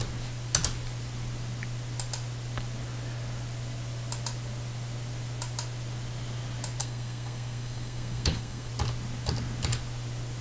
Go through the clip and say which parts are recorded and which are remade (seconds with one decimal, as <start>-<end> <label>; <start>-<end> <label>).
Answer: 0.0-6.8 recorded; 6.8-8.7 remade; 8.7-10.4 recorded